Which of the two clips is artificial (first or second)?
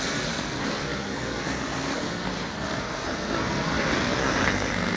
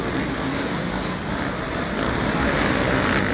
first